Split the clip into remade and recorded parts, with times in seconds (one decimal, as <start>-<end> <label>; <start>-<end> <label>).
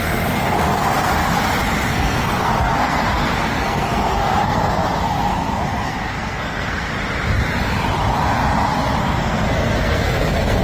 0.0-1.1 remade; 1.1-1.9 recorded; 1.9-6.9 remade; 6.9-9.0 recorded; 9.0-10.6 remade